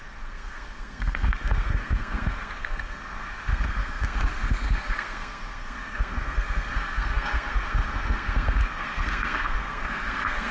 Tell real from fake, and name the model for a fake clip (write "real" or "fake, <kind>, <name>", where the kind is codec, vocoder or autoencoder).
fake, codec, SNAC